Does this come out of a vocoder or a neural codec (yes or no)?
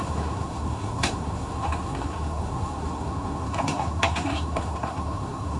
yes